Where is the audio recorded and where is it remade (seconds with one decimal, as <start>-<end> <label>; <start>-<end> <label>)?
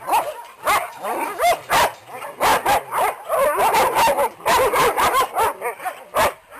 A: 0.0-6.6 recorded